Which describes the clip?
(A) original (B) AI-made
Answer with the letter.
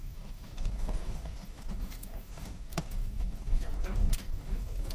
B